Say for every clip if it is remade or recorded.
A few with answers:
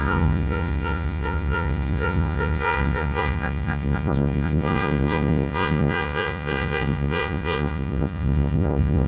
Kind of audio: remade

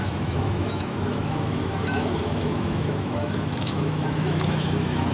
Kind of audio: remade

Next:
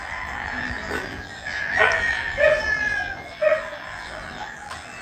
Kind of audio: remade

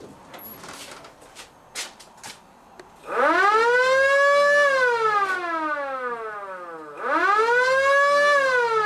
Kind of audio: recorded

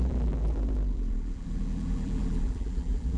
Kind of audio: remade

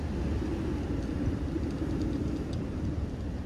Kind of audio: recorded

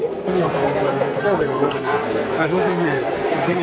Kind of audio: remade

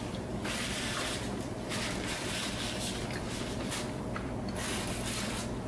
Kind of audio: remade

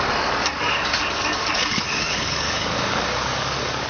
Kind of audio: remade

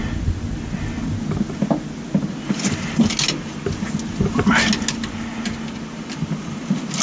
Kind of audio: recorded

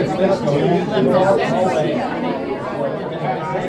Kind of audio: recorded